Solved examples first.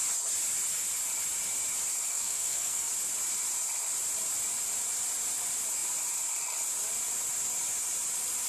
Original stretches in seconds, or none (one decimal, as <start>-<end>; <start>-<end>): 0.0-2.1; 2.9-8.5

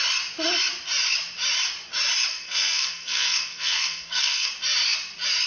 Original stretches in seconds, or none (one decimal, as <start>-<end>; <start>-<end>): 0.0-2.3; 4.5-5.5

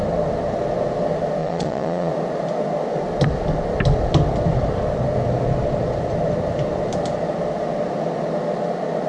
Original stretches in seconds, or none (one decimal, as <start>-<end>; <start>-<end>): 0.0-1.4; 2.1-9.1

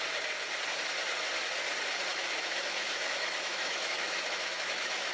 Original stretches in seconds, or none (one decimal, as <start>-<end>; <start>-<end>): 0.0-2.1

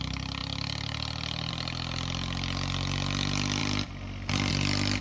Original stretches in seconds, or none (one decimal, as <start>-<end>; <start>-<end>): 0.0-3.6; 4.5-5.0

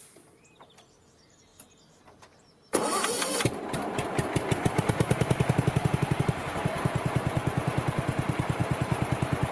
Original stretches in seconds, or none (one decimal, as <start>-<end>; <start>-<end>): 3.8-4.8

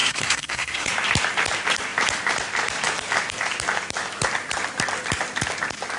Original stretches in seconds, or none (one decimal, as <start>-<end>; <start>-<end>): 0.9-6.0

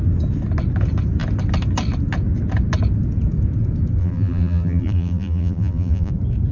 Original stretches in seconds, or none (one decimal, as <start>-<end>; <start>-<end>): 0.0-4.0; 6.1-6.5